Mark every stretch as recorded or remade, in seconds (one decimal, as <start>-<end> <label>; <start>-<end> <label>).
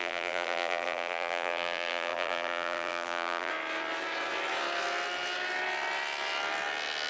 0.0-3.5 remade; 3.5-7.1 recorded